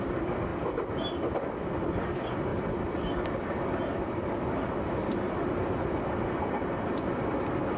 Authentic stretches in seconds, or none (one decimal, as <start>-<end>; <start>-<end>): 0.0-7.8